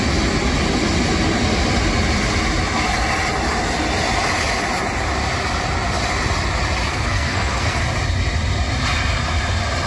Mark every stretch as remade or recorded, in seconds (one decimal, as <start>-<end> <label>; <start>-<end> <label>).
0.0-6.9 recorded; 6.9-7.8 remade; 7.8-9.9 recorded